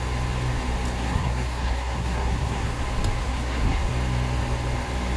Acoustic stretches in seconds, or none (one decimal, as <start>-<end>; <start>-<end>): 0.0-1.0; 2.8-3.2; 3.9-5.2